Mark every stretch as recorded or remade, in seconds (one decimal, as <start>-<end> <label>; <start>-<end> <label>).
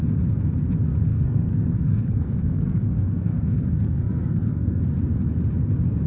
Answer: 0.0-1.1 recorded; 1.1-4.8 remade; 4.8-6.1 recorded